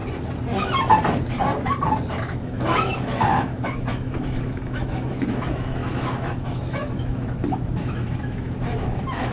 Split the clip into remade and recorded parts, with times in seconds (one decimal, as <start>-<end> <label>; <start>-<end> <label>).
0.0-2.2 recorded; 2.2-9.3 remade